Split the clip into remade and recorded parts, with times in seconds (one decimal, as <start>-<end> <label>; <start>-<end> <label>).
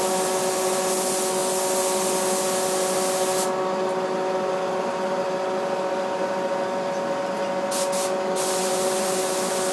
0.0-9.7 recorded